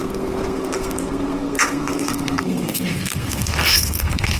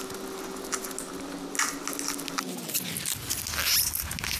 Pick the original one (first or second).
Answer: second